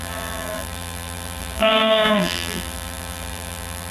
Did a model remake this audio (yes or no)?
yes